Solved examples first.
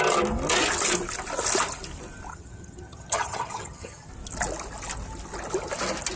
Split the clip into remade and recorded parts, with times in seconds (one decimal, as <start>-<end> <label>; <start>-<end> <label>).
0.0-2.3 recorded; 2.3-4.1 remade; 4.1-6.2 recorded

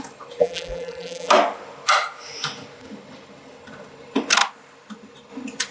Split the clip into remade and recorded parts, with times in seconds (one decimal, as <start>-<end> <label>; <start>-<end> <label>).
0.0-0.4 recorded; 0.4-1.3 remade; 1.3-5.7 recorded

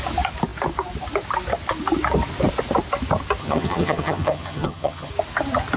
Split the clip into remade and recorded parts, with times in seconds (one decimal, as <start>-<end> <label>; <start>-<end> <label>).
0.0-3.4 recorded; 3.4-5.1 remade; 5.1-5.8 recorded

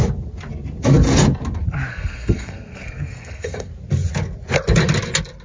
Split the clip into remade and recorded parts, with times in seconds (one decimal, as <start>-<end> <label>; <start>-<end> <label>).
0.0-1.9 recorded; 1.9-3.7 remade; 3.7-5.4 recorded

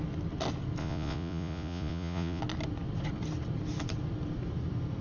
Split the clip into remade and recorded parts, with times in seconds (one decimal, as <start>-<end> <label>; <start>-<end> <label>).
0.0-0.8 recorded; 0.8-2.4 remade; 2.4-5.0 recorded

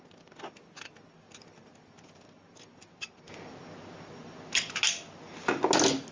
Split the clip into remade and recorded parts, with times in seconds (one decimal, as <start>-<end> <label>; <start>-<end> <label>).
0.0-6.1 recorded

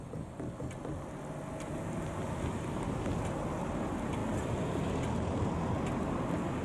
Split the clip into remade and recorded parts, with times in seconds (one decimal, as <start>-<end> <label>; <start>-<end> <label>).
0.0-6.6 recorded

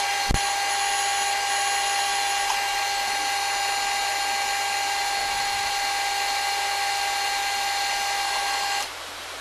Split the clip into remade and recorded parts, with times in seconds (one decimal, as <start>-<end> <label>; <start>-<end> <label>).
0.0-5.2 recorded; 5.2-5.7 remade; 5.7-9.4 recorded